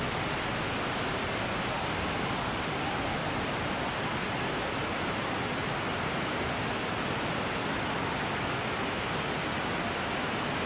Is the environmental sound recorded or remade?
recorded